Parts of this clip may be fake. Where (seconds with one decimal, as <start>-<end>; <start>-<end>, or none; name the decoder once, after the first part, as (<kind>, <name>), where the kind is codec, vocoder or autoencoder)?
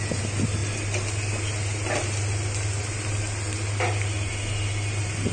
none